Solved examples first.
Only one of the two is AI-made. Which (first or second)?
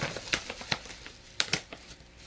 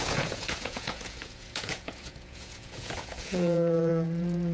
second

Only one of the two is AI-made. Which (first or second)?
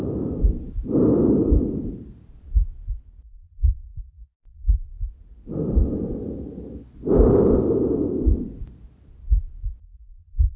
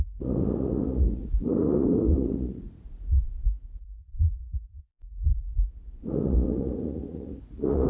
second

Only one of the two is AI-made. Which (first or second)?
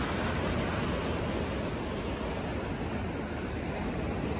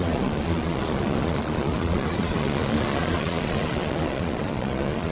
second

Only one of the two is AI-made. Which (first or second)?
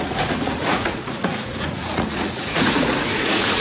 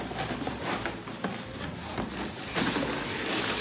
first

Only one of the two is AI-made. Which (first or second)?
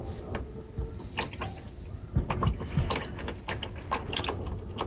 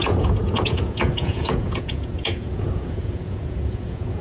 second